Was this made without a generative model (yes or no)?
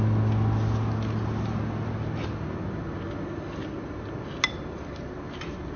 yes